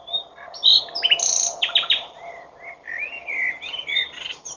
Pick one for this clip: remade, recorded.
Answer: recorded